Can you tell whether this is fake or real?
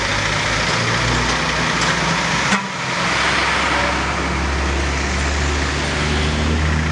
real